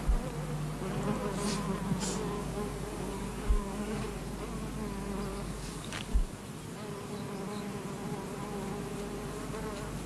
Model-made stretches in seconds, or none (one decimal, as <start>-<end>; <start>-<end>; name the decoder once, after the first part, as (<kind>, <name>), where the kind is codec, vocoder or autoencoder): 2.4-4.2 (codec, DAC); 5.3-6.4